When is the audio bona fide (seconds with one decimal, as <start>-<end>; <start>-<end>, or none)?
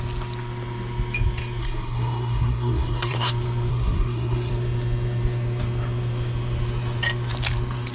0.0-1.6; 3.3-3.7; 4.5-7.9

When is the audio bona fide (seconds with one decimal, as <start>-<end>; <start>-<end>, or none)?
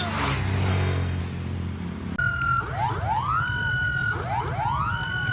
0.0-0.7; 1.2-5.3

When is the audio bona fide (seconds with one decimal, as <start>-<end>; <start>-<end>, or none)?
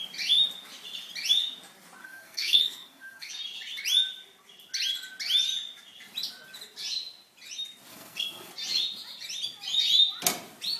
0.0-2.0; 3.3-7.9; 8.5-10.8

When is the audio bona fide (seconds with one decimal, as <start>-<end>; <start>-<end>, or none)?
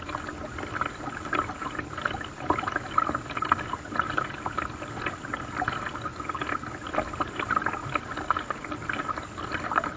0.0-10.0